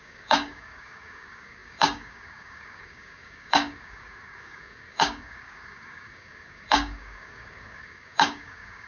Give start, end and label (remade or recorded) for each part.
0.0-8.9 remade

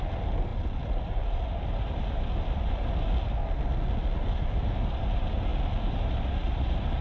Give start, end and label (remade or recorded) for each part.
0.0-3.4 remade; 3.4-4.3 recorded; 4.3-5.5 remade; 5.5-6.1 recorded; 6.1-7.0 remade